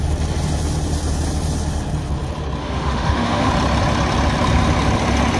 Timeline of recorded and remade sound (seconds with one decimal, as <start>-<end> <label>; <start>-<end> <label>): 0.0-2.6 recorded; 2.6-3.5 remade; 3.5-5.4 recorded

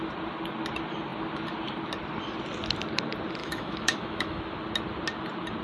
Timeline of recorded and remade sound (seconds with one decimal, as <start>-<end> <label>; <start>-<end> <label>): 0.0-3.4 recorded; 3.4-4.4 remade; 4.4-5.6 recorded

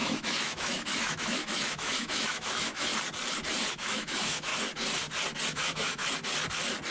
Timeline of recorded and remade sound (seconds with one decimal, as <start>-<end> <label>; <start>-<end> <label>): 0.0-2.9 remade; 2.9-3.7 recorded; 3.7-4.5 remade; 4.5-5.5 recorded; 5.5-6.0 remade; 6.0-6.9 recorded

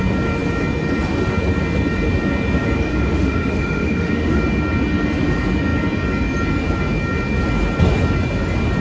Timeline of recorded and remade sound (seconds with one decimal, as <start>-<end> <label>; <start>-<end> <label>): 0.0-2.9 recorded; 2.9-4.4 remade; 4.4-8.8 recorded

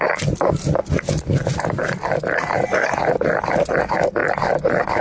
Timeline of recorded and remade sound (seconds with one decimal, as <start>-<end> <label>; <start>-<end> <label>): 0.0-5.0 recorded